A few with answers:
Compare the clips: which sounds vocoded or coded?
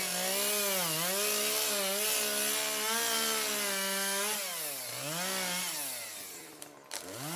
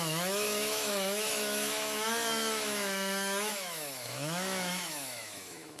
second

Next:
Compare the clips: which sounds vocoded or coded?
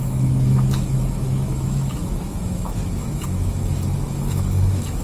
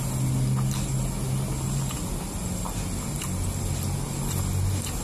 first